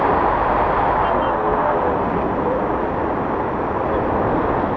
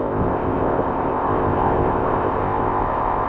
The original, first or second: first